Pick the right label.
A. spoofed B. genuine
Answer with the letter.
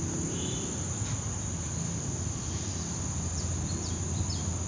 B